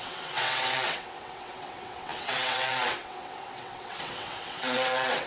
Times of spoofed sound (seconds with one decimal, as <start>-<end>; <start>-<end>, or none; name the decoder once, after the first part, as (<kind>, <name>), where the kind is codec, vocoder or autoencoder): 0.0-5.3 (vocoder, WaveNeXt)